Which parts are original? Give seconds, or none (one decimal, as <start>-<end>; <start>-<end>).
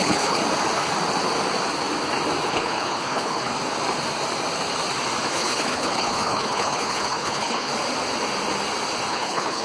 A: 0.4-2.5; 3.5-5.3; 7.7-9.1